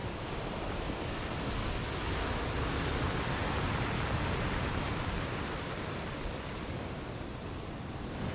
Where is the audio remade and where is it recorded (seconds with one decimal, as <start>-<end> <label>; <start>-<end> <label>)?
0.0-8.3 recorded

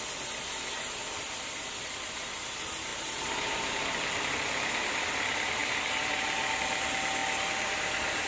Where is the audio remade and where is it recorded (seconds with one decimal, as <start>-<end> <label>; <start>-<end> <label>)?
0.0-1.0 recorded; 1.0-1.9 remade; 1.9-2.9 recorded; 2.9-5.0 remade; 5.0-8.3 recorded

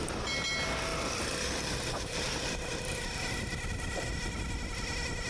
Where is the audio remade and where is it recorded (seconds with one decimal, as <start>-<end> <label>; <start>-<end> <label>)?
0.0-0.9 recorded; 0.9-4.1 remade; 4.1-5.3 recorded

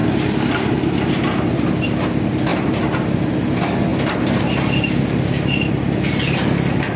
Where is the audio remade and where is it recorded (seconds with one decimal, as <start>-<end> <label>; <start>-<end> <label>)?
0.0-7.0 recorded

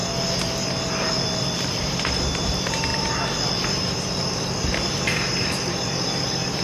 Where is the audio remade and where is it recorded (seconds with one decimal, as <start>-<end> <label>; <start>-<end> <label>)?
0.0-1.4 recorded; 1.4-6.6 remade